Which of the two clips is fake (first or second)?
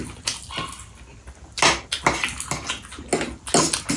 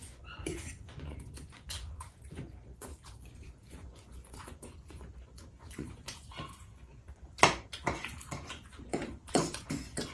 second